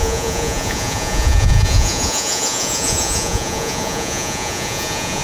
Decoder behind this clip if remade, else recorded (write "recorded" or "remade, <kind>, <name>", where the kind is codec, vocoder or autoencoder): remade, vocoder, Vocos